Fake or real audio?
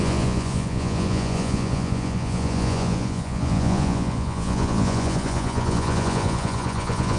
fake